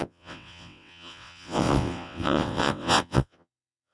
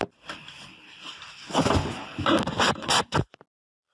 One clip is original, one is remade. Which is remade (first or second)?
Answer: first